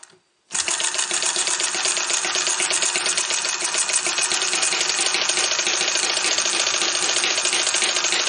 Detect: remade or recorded recorded